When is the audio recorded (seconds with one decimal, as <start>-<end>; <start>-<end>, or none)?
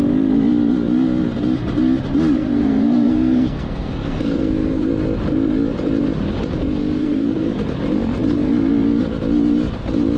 0.0-2.4; 4.9-7.0; 7.7-10.2